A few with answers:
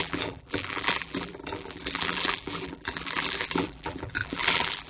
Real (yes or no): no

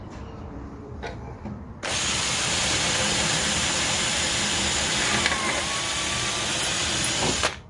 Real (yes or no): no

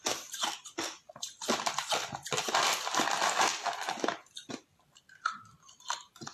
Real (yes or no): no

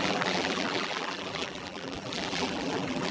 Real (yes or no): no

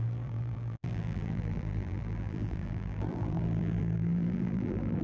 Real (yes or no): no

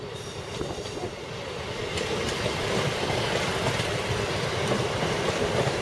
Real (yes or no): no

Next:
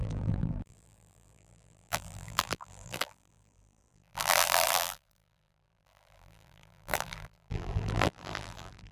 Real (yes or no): no